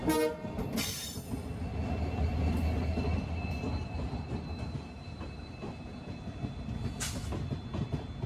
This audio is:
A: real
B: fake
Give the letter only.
A